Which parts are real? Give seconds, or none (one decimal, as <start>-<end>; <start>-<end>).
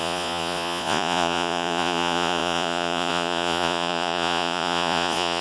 none